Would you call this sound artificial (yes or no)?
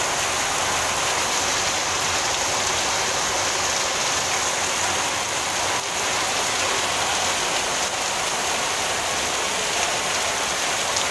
no